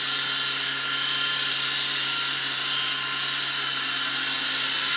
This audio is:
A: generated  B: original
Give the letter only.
B